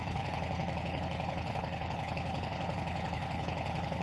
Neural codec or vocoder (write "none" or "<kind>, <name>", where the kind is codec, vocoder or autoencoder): codec, HILCodec